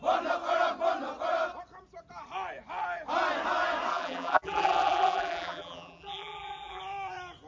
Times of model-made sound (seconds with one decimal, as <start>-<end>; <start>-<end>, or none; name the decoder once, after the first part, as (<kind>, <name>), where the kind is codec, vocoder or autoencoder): 3.9-6.8 (vocoder, BigVGAN v2)